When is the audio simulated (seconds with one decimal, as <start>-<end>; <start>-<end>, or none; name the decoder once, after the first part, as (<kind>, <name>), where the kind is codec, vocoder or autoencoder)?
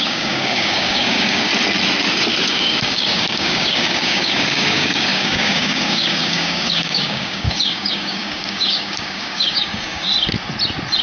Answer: 0.0-1.5 (codec, DAC); 2.5-10.1